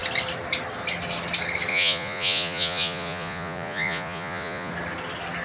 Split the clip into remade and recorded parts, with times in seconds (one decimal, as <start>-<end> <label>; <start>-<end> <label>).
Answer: 0.0-1.7 recorded; 1.7-4.7 remade; 4.7-5.4 recorded